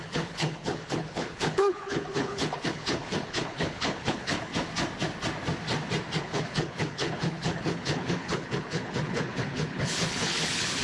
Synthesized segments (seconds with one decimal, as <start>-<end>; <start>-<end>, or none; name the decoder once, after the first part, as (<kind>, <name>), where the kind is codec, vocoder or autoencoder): 0.0-4.5 (codec, HILCodec); 6.2-10.8

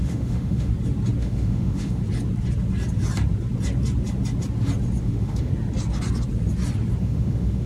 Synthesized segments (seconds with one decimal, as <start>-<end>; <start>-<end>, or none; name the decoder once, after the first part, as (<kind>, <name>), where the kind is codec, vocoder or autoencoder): 0.0-0.7 (autoencoder, DAC-VAE); 1.2-2.0; 5.0-5.5; 7.0-7.7

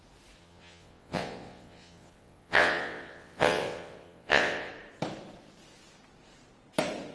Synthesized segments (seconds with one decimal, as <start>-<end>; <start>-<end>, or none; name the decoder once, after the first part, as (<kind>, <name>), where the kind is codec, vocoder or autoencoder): 0.4-4.7 (vocoder, WaveNeXt)

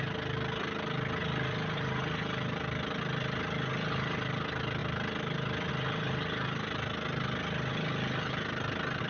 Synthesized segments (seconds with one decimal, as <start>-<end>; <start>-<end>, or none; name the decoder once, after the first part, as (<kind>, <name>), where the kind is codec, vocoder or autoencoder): 1.2-3.0 (vocoder, BigVGAN v2); 4.8-5.7

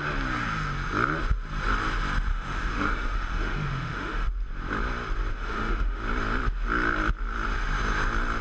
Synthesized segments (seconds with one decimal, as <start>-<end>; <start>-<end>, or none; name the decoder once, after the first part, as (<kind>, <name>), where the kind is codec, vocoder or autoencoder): 2.3-4.3 (autoencoder, DAC-VAE); 5.3-6.0